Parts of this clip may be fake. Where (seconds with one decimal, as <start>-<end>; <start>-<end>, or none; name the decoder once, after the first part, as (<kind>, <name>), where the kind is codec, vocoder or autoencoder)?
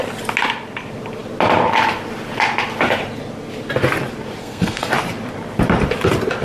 4.4-4.9 (codec, SNAC)